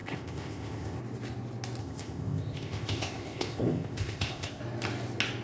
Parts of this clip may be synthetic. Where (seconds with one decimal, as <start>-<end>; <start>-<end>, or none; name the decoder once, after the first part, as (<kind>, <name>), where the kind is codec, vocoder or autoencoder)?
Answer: 0.0-1.0 (codec, ZipCodec); 1.8-4.6